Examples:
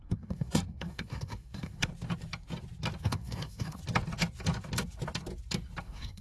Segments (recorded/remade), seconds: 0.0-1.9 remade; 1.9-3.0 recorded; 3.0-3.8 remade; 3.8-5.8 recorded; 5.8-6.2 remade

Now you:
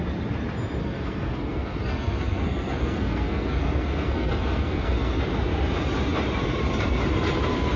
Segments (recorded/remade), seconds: 0.0-0.8 recorded; 0.8-5.2 remade; 5.2-7.8 recorded

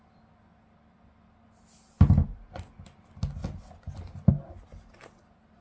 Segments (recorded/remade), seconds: 0.0-5.6 recorded

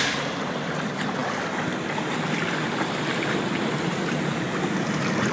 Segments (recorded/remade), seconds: 0.0-5.3 recorded

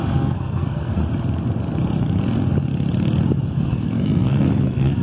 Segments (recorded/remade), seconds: 0.0-1.0 remade; 1.0-3.5 recorded; 3.5-5.0 remade

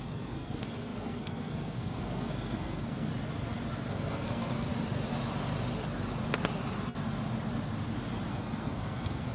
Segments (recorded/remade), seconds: 0.0-3.1 remade; 3.1-3.9 recorded; 3.9-4.7 remade; 4.7-8.3 recorded; 8.3-9.3 remade